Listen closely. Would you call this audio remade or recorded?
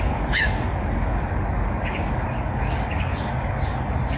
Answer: remade